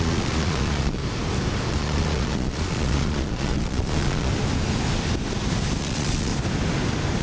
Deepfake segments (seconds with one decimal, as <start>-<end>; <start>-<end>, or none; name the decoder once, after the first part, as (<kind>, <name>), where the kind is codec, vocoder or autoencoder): 0.0-1.0 (vocoder, Vocos); 1.7-4.3; 5.8-6.3